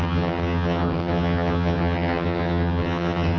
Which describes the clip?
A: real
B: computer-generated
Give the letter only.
B